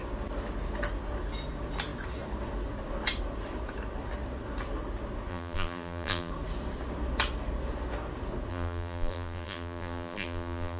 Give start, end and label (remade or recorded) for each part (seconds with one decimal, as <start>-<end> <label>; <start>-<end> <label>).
0.0-5.3 recorded; 5.3-6.3 remade; 6.3-8.5 recorded; 8.5-10.8 remade